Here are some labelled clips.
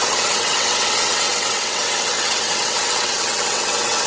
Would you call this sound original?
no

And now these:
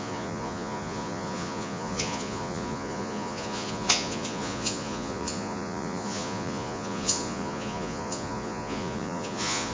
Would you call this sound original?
no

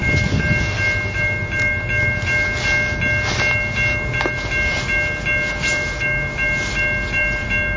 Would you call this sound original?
yes